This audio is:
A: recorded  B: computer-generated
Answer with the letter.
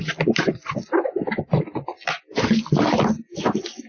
A